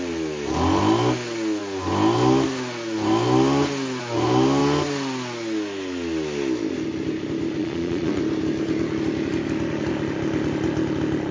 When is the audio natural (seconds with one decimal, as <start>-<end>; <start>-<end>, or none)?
0.0-7.6; 8.2-11.3